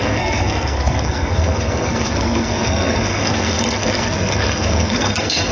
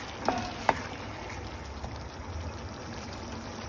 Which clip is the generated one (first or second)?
first